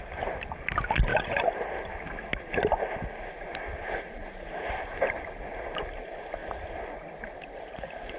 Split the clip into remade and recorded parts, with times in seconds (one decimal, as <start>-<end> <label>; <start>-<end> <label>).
0.0-1.1 recorded; 1.1-1.9 remade; 1.9-3.5 recorded; 3.5-5.8 remade; 5.8-8.2 recorded

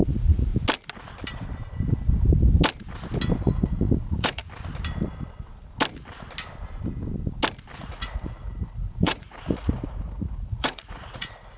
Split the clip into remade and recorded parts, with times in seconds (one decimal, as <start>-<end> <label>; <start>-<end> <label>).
0.0-0.5 remade; 0.5-3.4 recorded; 3.4-4.4 remade; 4.4-7.8 recorded; 7.8-11.6 remade